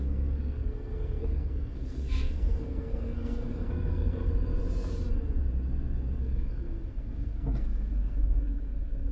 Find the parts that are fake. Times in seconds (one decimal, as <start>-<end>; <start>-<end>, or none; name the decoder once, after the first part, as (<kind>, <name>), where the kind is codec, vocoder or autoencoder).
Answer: 0.0-4.3 (codec, SNAC); 6.2-9.1